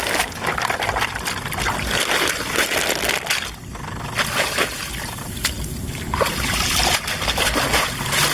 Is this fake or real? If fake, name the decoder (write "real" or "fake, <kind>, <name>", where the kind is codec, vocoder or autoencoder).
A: real